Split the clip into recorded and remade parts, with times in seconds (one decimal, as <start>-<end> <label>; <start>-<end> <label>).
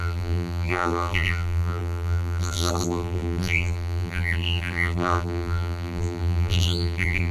0.0-7.3 remade